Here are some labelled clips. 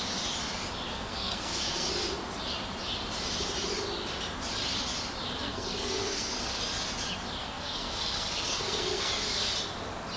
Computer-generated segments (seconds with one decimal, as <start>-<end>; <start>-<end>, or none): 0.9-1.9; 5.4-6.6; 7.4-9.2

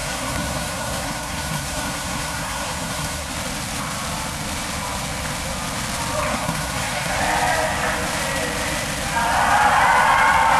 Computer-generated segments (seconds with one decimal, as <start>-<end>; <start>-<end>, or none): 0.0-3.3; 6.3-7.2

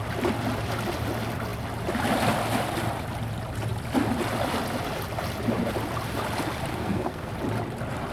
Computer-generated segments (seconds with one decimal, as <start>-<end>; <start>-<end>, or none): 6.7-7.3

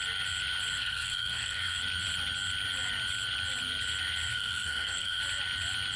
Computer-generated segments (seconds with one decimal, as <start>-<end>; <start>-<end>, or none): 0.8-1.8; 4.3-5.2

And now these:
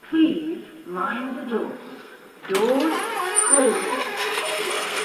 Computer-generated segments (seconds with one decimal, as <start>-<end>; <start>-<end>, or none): 0.0-2.4; 3.2-5.0

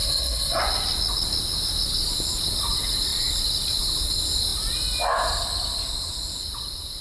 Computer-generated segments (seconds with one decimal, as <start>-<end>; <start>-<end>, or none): 0.0-0.6